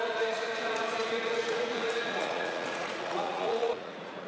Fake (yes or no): yes